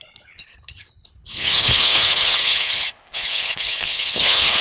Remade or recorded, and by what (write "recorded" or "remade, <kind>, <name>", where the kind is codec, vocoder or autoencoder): remade, codec, HILCodec